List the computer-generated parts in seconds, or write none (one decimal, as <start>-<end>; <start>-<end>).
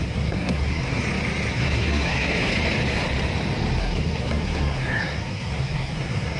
0.0-1.0; 1.5-2.5; 3.8-6.4